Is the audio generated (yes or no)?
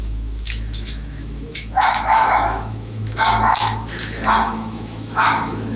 yes